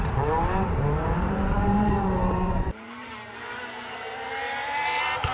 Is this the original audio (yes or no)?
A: no